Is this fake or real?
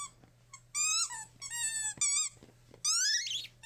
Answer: real